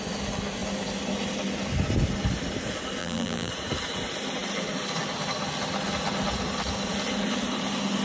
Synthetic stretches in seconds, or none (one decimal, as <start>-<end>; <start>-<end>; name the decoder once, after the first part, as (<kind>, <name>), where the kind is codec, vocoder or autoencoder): 3.0-3.5 (vocoder, BigVGAN v2)